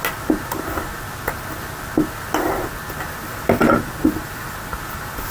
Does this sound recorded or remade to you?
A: recorded